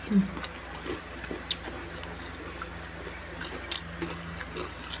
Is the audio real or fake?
real